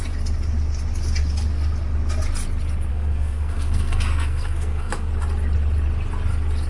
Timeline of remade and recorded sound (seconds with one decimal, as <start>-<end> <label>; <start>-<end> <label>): 0.0-2.9 recorded; 2.9-5.1 remade; 5.1-6.7 recorded